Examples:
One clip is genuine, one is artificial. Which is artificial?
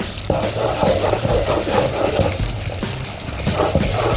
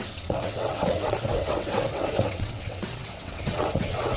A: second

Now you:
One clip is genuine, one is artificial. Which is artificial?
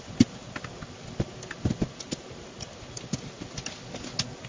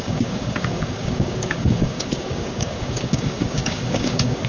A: second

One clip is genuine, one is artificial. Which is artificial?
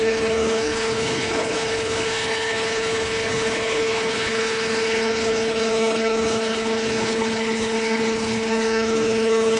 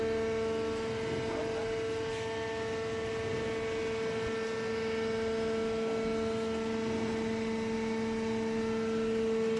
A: first